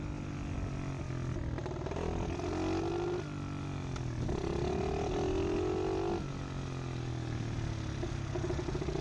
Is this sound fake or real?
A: real